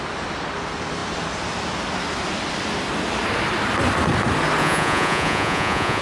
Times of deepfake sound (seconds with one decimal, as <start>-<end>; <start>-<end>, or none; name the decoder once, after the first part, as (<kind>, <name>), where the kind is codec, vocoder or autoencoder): 4.6-6.0 (vocoder, Vocos)